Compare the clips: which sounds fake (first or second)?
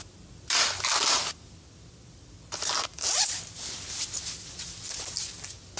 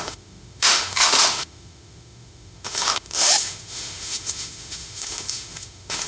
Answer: second